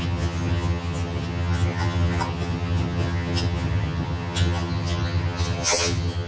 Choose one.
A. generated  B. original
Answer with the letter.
A